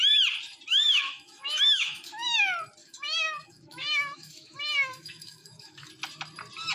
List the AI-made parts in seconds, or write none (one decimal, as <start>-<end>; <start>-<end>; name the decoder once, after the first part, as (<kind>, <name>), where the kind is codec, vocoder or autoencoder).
0.7-2.4 (autoencoder, DAC-VAE); 2.8-5.9